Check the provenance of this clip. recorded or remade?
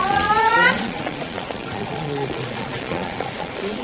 remade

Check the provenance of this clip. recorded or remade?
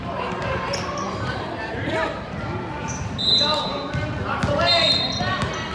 recorded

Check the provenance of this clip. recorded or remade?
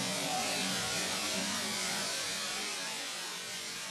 remade